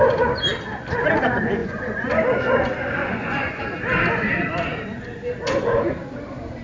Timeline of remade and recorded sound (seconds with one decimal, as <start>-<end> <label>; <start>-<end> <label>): 0.0-1.6 recorded; 1.6-2.1 remade; 2.1-3.0 recorded; 3.0-3.6 remade; 3.6-6.6 recorded